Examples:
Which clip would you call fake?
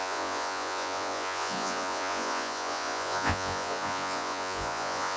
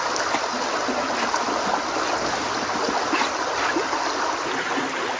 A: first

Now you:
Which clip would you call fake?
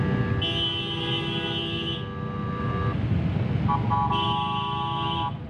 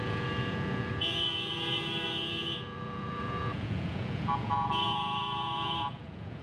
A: second